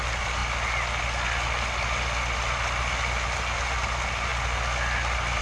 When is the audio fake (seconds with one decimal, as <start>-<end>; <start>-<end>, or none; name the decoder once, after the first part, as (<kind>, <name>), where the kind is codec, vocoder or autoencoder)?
none